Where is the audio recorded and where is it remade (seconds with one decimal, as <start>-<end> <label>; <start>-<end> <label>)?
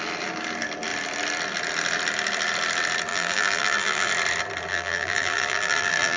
0.0-3.1 recorded; 3.1-4.1 remade; 4.1-4.7 recorded; 4.7-6.2 remade